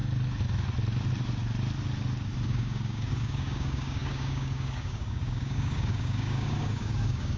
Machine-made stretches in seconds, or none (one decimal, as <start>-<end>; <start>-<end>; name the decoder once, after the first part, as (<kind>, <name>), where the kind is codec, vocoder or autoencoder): 2.5-7.4 (codec, DAC)